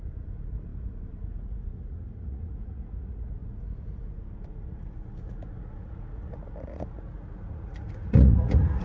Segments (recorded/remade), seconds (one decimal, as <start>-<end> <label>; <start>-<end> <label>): 0.0-8.8 remade